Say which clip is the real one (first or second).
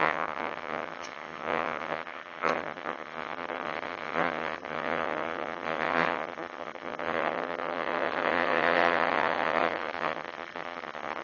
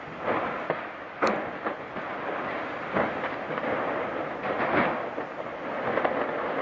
second